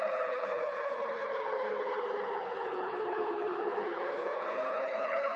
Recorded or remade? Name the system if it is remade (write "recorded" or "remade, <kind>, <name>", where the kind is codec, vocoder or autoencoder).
remade, codec, HILCodec